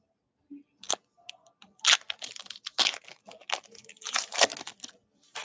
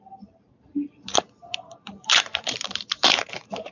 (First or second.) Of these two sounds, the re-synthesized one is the second